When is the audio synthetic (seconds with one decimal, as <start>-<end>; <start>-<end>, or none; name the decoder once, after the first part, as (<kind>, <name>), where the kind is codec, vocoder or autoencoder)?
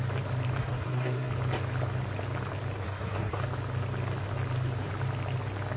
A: 0.6-1.3 (codec, SNAC); 2.8-3.4